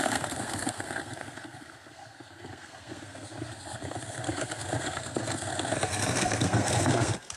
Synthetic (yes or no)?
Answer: yes